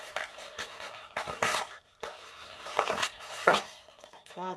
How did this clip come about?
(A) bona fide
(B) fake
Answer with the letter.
B